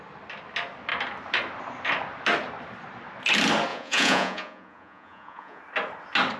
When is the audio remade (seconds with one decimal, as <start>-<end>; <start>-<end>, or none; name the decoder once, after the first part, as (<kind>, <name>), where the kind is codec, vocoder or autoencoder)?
3.7-5.6 (vocoder, Vocos)